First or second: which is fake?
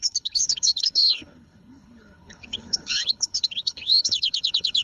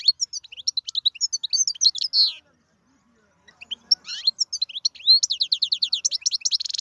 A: first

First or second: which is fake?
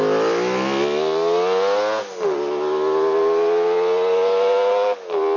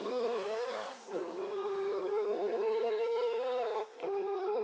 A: second